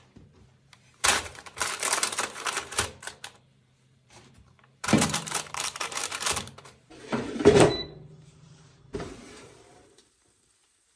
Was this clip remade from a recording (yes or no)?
yes